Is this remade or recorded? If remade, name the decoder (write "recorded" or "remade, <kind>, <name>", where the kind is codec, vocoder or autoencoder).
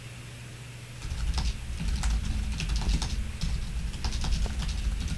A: recorded